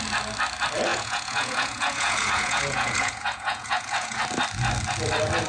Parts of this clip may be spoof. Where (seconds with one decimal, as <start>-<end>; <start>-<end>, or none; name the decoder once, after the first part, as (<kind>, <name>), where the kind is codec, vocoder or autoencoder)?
0.9-4.2 (vocoder, Vocos)